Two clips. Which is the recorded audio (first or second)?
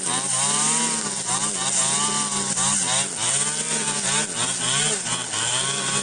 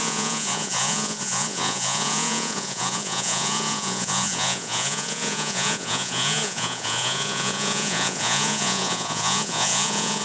first